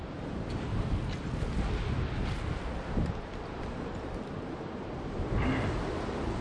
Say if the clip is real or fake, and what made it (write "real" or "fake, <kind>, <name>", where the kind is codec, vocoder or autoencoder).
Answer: real